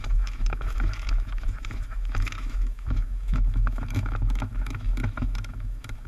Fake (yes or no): yes